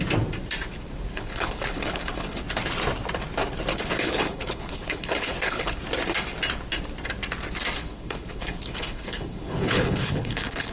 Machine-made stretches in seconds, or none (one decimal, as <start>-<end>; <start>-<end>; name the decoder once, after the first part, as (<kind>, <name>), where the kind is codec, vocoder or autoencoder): 1.1-2.4 (codec, HILCodec); 3.7-5.8; 7.8-10.7